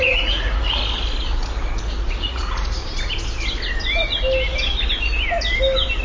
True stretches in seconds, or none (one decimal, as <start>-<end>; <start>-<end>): 0.8-2.1; 2.8-6.0